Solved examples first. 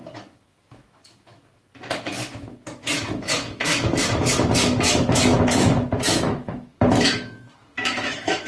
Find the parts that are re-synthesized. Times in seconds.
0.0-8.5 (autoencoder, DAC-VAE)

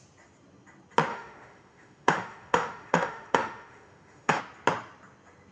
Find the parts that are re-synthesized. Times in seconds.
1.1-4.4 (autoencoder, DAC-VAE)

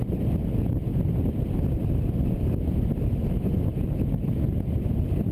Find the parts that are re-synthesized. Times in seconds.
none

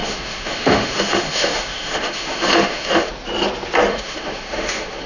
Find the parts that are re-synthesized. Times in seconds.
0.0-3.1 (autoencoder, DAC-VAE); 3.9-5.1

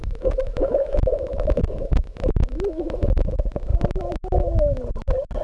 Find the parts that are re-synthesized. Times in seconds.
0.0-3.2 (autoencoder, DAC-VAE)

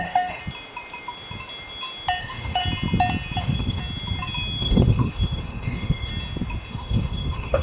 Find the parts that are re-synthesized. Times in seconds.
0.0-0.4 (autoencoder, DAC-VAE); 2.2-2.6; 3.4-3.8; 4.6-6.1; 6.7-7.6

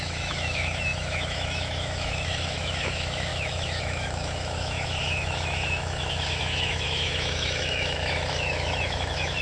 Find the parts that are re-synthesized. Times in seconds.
0.0-9.4 (autoencoder, DAC-VAE)